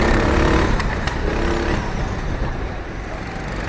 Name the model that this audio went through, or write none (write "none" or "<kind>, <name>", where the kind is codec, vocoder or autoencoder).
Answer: none